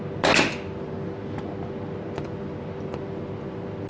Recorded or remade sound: recorded